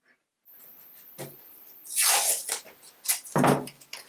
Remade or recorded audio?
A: recorded